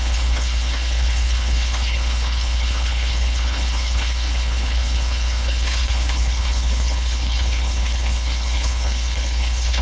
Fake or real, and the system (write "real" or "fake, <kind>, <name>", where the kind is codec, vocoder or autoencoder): fake, codec, HILCodec